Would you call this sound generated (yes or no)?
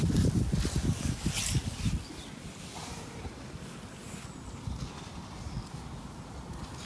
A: no